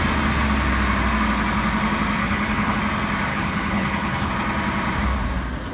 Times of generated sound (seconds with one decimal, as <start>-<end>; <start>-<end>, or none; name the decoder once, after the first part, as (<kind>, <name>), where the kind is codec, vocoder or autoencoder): 2.2-2.8 (codec, HILCodec); 3.3-4.3